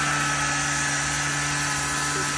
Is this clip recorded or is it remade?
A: recorded